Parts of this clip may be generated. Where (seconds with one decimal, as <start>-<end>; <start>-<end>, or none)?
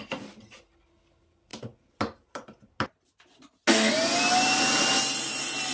0.0-1.5; 4.9-5.7